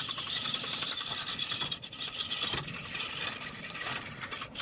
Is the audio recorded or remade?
remade